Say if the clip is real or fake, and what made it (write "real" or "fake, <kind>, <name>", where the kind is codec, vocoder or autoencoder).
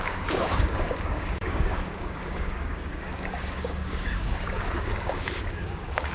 fake, codec, DAC